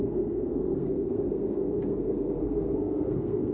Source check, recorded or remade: remade